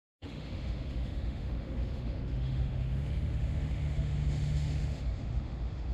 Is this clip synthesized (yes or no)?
yes